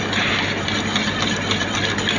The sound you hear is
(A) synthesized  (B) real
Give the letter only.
B